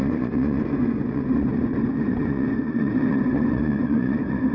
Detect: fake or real fake